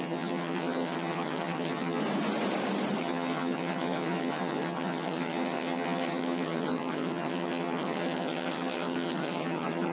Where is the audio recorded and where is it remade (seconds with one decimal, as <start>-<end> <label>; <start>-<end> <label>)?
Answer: 0.0-2.0 remade; 2.0-3.0 recorded; 3.0-9.9 remade